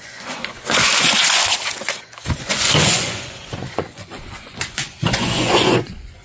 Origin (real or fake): fake